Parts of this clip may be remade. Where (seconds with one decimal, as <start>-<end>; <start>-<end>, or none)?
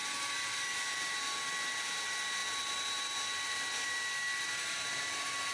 none